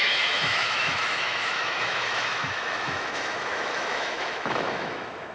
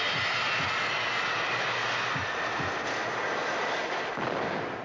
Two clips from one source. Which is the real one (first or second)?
second